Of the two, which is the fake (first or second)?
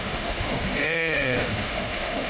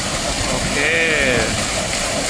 first